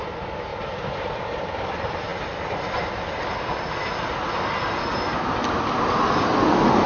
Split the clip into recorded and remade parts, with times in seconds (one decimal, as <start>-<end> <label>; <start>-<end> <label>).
0.0-6.9 recorded